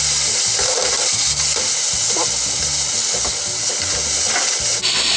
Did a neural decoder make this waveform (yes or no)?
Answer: no